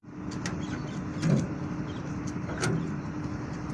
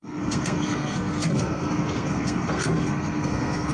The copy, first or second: second